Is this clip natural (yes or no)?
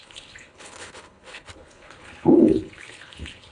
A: no